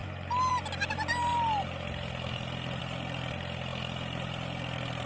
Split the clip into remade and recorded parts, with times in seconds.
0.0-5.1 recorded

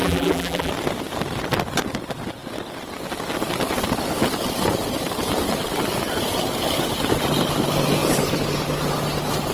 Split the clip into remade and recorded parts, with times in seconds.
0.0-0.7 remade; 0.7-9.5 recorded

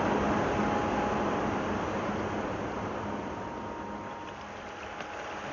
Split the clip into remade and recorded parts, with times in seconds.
0.0-5.5 recorded

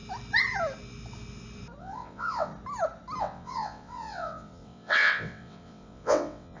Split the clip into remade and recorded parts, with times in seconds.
0.0-1.8 recorded; 1.8-2.5 remade; 2.5-3.2 recorded; 3.2-6.6 remade

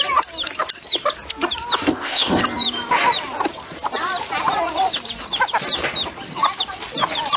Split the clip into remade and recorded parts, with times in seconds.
0.0-1.9 recorded; 1.9-2.4 remade; 2.4-7.4 recorded

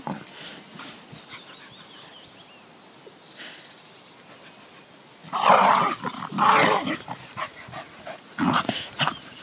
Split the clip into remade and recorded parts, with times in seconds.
0.0-0.5 recorded; 0.5-1.2 remade; 1.2-6.8 recorded; 6.8-9.4 remade

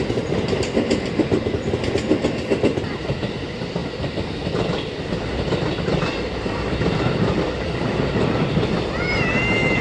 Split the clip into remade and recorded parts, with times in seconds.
0.0-3.8 remade; 3.8-5.8 recorded; 5.8-9.8 remade

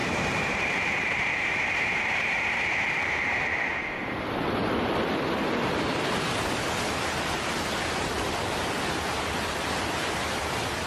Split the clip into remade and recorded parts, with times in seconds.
0.0-3.6 remade; 3.6-10.9 recorded